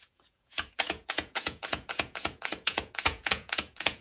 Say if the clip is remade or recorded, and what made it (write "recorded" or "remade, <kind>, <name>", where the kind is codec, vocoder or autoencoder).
remade, vocoder, Vocos